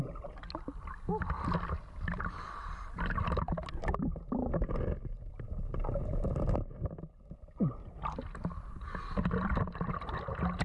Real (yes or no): yes